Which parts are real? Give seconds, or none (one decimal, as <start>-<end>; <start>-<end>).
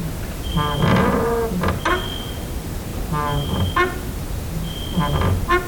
0.0-5.7